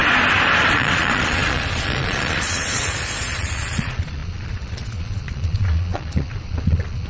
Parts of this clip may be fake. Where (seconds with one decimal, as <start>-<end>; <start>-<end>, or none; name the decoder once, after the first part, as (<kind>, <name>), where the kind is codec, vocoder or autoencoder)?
0.6-7.1 (vocoder, Vocos)